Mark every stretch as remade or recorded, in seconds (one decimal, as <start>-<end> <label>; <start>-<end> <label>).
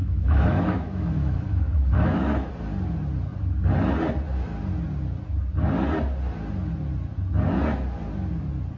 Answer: 0.0-2.5 remade; 2.5-8.8 recorded